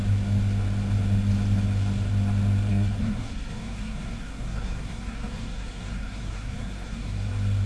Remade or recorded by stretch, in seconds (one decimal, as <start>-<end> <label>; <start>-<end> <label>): 0.0-2.7 recorded; 2.7-7.3 remade; 7.3-7.7 recorded